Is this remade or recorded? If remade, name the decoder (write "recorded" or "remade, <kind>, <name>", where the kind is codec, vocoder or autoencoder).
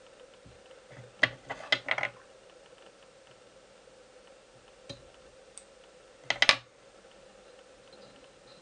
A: recorded